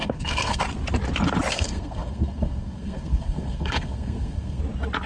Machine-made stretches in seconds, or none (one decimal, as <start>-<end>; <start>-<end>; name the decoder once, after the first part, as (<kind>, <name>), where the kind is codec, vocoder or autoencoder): 0.0-0.6 (codec, SNAC); 1.5-4.6

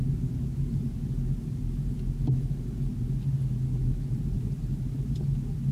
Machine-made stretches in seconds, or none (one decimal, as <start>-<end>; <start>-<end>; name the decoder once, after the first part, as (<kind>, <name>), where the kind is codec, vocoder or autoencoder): none

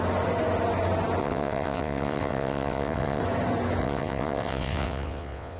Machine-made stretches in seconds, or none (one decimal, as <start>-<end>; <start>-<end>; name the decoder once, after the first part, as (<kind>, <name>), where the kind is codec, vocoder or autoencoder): 1.2-3.2 (vocoder, WaveNeXt); 3.8-5.6

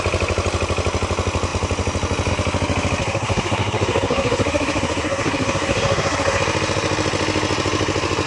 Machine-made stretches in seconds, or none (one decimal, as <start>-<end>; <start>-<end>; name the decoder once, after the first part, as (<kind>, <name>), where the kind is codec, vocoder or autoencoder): 3.0-6.4 (codec, SNAC)

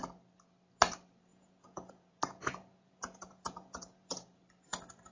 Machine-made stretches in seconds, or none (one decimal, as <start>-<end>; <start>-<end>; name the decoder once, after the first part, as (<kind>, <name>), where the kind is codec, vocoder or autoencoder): 1.3-4.4 (vocoder, Vocos)

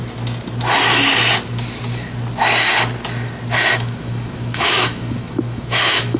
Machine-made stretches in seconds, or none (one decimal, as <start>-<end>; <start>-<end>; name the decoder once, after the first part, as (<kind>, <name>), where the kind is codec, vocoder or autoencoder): 3.7-6.2 (autoencoder, DAC-VAE)